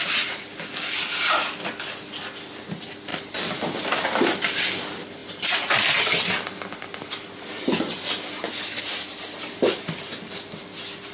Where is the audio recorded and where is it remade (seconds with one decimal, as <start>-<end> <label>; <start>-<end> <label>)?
0.0-11.1 recorded